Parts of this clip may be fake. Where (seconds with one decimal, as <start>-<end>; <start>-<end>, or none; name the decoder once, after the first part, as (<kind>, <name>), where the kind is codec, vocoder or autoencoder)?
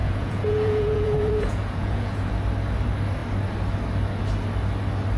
0.0-2.3 (vocoder, Vocos)